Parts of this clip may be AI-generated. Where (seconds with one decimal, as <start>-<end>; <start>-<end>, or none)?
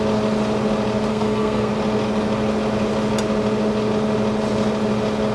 1.1-1.7